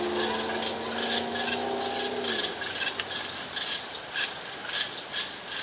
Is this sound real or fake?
real